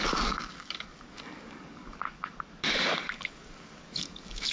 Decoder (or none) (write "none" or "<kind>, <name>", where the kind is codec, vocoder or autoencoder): codec, DAC